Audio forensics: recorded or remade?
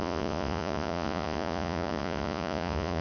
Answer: remade